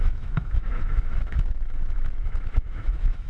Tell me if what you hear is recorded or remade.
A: remade